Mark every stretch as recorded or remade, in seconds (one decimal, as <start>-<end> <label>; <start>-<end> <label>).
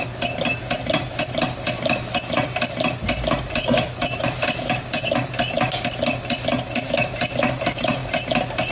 0.0-8.7 recorded